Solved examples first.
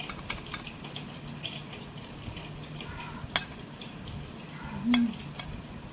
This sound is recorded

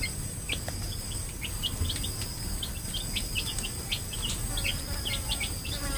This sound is recorded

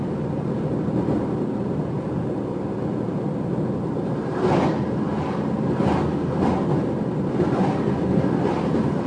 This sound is recorded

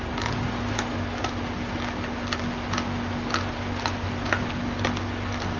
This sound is recorded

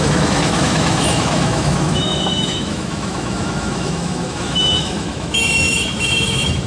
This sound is remade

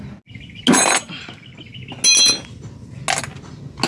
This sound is recorded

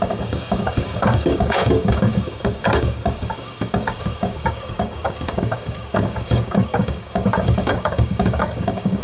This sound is remade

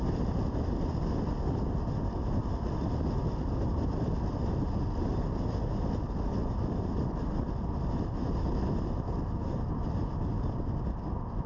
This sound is recorded